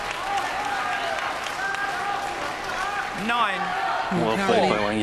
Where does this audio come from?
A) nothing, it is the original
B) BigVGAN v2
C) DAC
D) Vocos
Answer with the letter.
A